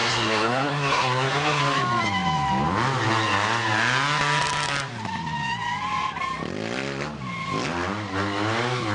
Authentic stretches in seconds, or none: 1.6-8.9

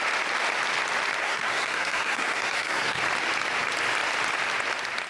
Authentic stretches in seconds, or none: 0.0-1.2; 3.0-5.1

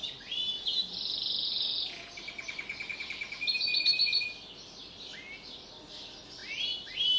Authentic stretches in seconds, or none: 0.0-7.2

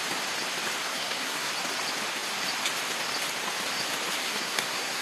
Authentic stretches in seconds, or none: 0.0-0.9; 1.5-4.2